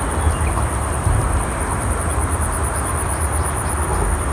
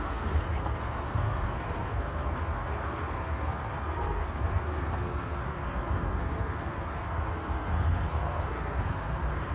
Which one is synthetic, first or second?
second